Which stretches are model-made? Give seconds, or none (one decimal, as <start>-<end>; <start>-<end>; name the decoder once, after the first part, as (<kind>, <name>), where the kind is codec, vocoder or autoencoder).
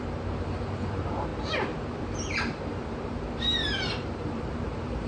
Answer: 0.0-5.1 (vocoder, BigVGAN v2)